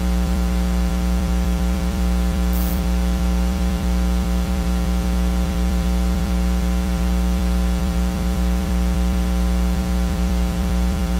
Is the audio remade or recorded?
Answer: remade